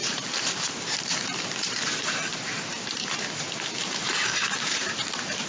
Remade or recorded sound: remade